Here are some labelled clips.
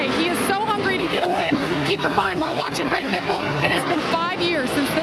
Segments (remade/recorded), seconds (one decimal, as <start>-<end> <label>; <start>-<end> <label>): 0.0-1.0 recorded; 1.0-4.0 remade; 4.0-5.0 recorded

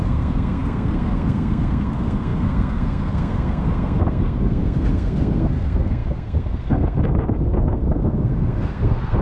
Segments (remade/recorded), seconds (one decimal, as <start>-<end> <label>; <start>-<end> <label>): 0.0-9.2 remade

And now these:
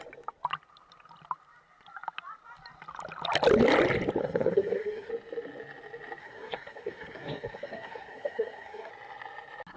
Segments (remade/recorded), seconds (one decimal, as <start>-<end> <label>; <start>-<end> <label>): 0.0-4.2 recorded; 4.2-5.1 remade; 5.1-6.2 recorded; 6.2-8.9 remade; 8.9-9.8 recorded

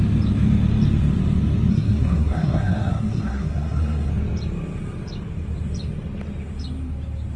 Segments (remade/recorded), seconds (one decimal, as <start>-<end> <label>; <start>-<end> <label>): 0.0-1.7 recorded; 1.7-4.1 remade; 4.1-7.4 recorded